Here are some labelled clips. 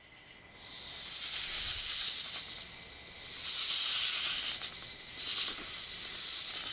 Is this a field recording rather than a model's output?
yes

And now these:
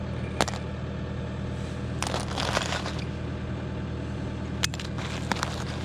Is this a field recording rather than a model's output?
yes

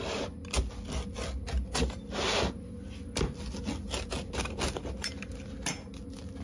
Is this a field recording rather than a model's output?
yes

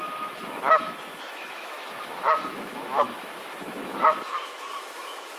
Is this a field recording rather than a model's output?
no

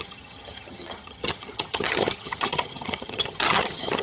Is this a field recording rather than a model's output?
no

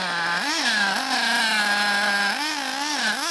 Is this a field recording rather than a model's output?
yes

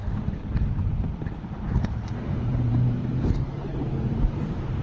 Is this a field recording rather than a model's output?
no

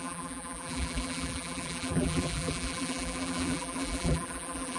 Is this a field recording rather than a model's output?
no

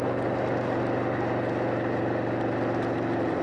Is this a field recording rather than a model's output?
yes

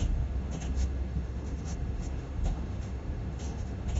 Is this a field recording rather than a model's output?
no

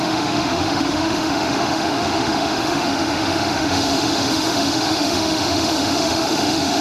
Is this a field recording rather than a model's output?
no